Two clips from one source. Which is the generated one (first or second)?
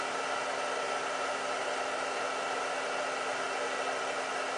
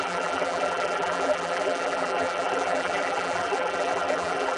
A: second